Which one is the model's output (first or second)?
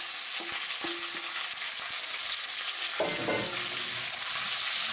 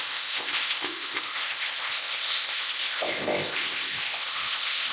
second